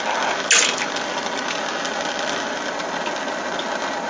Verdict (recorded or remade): recorded